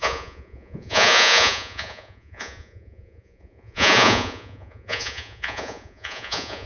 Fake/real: fake